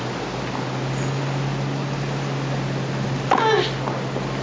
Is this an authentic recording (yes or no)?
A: yes